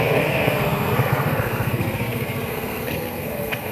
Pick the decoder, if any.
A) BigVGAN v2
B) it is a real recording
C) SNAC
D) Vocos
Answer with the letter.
C